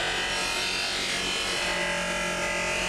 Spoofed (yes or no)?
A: no